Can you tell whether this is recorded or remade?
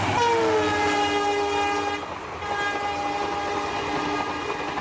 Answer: recorded